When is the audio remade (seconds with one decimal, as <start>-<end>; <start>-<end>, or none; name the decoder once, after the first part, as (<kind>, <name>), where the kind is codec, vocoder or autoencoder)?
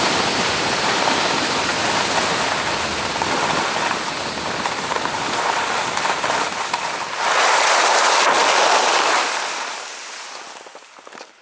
0.0-1.7 (vocoder, BigVGAN v2); 3.1-11.4